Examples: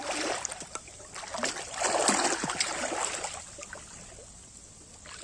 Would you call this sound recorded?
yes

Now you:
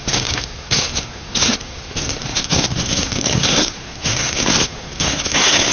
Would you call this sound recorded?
no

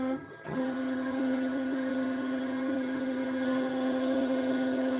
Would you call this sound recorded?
no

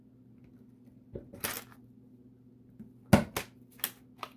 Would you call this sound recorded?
yes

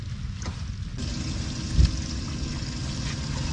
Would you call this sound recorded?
yes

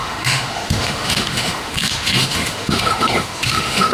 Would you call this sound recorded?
no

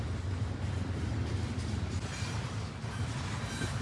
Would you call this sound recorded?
yes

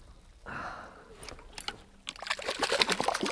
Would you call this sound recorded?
yes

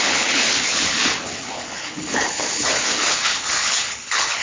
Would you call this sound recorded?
no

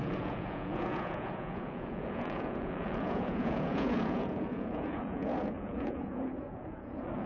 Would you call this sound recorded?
no